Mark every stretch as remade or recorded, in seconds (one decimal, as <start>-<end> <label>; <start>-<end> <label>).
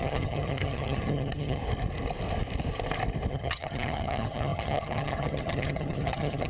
0.0-1.6 remade; 1.6-3.3 recorded; 3.3-6.5 remade